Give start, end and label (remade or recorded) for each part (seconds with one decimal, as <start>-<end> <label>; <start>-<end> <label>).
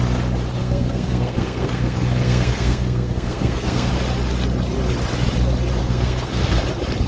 0.0-0.6 recorded; 0.6-3.9 remade; 3.9-5.8 recorded; 5.8-6.6 remade; 6.6-7.1 recorded